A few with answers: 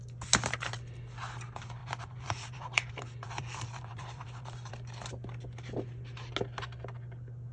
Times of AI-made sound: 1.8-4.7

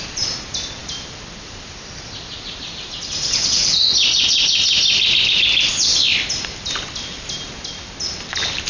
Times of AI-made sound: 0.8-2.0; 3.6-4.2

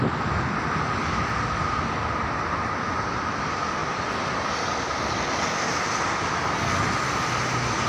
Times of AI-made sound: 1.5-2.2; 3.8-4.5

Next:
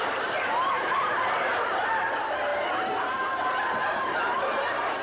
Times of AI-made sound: 0.0-5.0

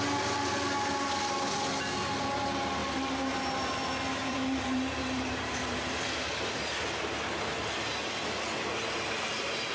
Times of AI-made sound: 4.2-6.1